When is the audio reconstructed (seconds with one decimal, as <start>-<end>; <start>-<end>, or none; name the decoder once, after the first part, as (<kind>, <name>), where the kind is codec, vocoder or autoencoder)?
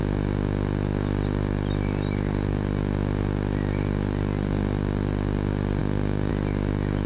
none